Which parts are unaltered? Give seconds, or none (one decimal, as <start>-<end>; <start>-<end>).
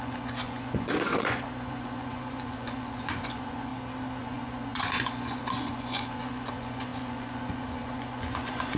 3.7-4.2